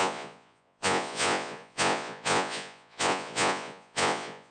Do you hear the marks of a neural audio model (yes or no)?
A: yes